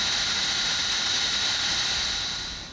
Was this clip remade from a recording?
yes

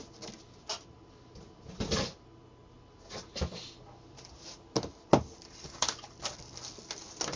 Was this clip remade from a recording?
no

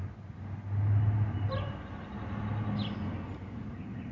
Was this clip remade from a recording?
no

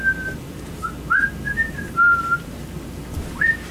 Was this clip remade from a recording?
yes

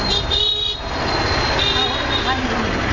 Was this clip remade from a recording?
no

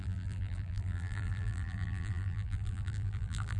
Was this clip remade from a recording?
yes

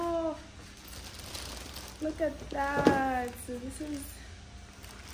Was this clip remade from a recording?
no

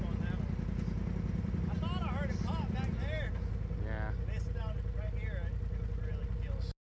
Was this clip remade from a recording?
no